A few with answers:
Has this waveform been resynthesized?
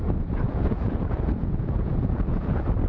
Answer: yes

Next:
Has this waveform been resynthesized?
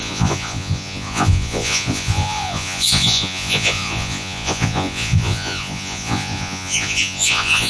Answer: yes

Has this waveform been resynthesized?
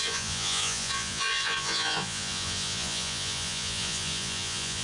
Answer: yes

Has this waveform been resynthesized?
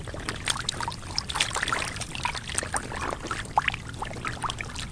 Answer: no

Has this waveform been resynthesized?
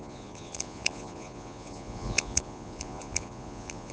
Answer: yes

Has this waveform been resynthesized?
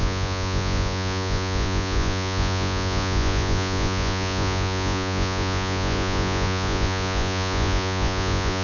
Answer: yes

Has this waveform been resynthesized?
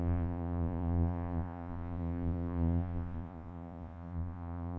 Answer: yes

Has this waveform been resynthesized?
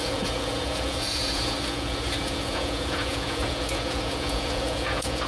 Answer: yes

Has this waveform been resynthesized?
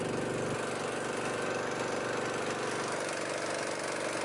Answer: no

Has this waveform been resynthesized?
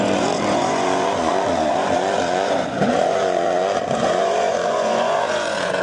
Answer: yes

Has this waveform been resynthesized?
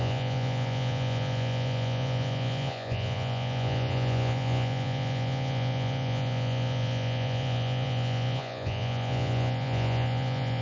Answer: yes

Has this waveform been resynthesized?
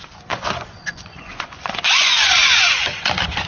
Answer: yes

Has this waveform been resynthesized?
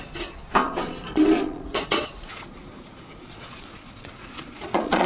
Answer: yes